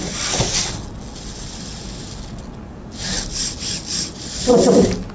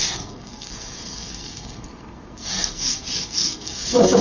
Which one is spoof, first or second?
second